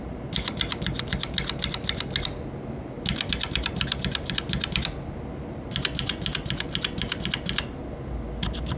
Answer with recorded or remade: recorded